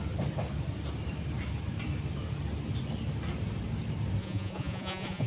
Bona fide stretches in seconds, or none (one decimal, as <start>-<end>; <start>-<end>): 0.0-4.2